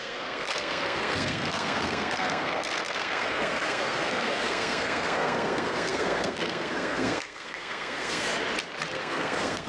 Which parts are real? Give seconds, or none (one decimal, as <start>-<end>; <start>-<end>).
8.3-8.9